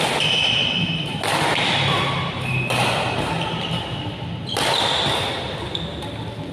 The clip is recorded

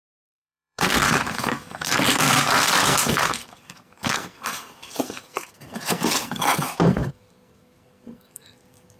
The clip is remade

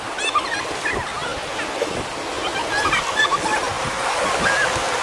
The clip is recorded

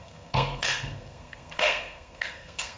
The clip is remade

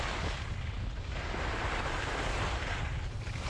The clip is recorded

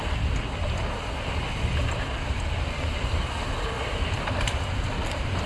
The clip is recorded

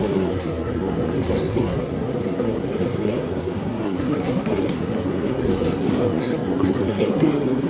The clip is remade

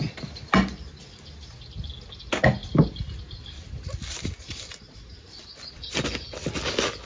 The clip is recorded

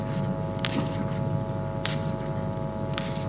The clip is recorded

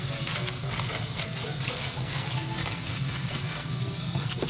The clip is remade